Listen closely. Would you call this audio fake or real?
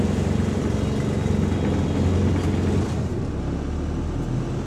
real